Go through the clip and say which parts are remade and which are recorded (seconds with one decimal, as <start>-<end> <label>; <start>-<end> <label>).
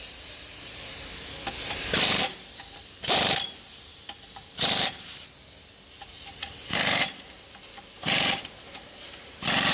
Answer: 0.0-1.1 remade; 1.1-2.2 recorded; 2.2-3.9 remade; 3.9-6.3 recorded; 6.3-9.7 remade